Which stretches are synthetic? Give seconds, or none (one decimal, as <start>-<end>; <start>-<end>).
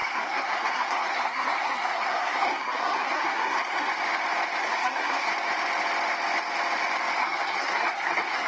0.0-3.9; 4.6-5.3; 7.2-8.5